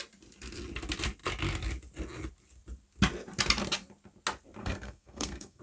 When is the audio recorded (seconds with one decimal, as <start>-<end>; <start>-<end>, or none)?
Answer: 0.0-4.6